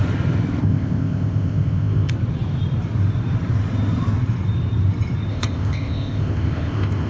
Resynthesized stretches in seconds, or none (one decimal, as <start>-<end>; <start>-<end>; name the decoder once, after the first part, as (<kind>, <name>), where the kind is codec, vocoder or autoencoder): 0.6-2.1 (codec, ZipCodec); 5.3-7.1